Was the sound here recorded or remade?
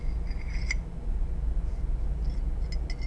recorded